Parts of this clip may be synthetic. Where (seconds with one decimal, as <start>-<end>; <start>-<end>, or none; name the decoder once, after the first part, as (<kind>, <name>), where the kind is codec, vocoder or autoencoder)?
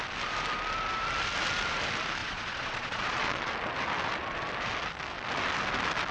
2.2-3.5 (vocoder, Vocos)